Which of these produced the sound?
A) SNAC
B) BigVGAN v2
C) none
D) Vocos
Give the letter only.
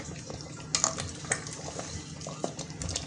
C